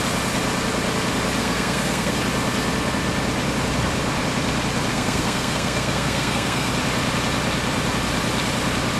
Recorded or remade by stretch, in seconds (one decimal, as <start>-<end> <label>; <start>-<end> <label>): 0.0-1.4 recorded; 1.4-2.2 remade; 2.2-4.9 recorded; 4.9-6.7 remade; 6.7-9.0 recorded